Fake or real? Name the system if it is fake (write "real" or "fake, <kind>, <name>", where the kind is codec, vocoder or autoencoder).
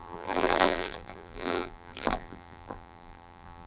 fake, vocoder, BigVGAN v2